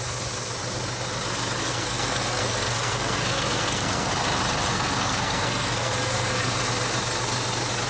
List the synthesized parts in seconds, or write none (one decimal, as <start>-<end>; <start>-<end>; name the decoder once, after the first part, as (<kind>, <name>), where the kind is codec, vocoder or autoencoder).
1.6-4.1 (codec, SNAC); 4.7-6.5